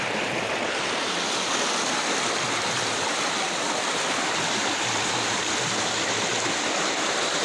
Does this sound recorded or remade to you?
remade